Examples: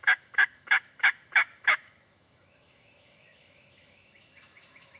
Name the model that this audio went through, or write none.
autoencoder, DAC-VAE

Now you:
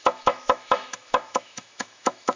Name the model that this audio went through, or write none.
autoencoder, DAC-VAE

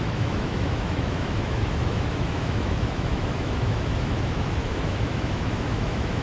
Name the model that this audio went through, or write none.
autoencoder, DAC-VAE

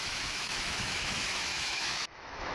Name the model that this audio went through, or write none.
autoencoder, DAC-VAE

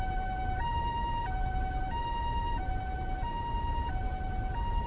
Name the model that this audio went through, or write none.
none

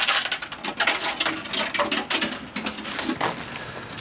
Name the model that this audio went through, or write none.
none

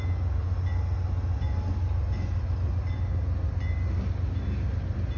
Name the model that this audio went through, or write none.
none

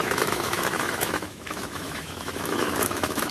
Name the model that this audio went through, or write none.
autoencoder, DAC-VAE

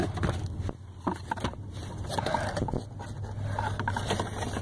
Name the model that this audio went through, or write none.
none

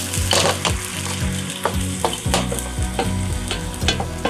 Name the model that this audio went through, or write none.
none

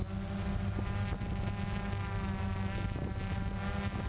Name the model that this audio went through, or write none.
none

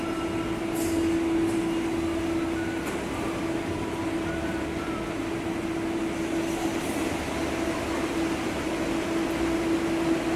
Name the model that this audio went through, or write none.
none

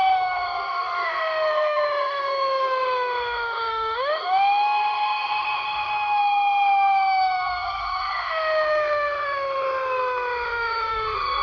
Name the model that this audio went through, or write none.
autoencoder, DAC-VAE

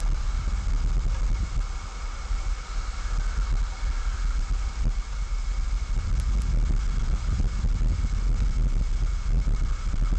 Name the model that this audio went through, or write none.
none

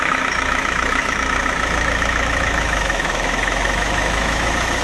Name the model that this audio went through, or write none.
autoencoder, DAC-VAE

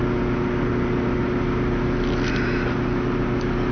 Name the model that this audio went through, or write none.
none